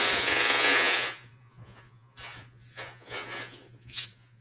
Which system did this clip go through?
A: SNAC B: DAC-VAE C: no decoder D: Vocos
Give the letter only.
D